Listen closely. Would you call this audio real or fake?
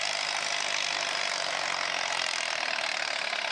real